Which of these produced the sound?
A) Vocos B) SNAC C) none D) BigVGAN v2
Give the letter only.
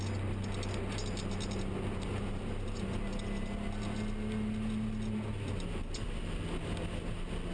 C